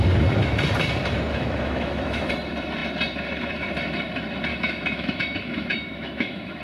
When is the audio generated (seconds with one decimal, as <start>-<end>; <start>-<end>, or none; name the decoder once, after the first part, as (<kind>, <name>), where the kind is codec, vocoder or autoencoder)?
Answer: 1.3-2.3 (autoencoder, DAC-VAE); 4.5-6.6